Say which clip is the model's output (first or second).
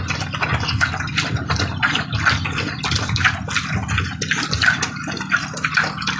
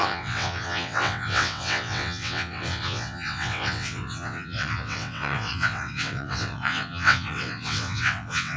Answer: second